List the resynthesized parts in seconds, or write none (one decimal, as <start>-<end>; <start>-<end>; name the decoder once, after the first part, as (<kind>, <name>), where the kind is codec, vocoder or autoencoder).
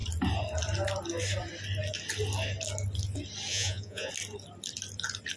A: 3.5-4.1 (vocoder, Vocos)